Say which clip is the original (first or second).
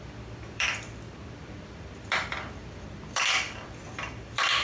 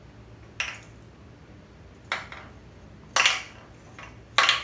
second